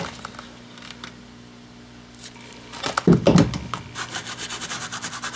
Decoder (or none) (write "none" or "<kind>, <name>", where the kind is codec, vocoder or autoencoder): none